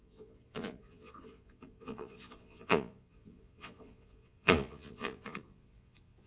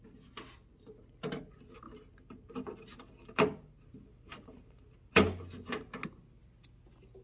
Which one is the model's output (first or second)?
first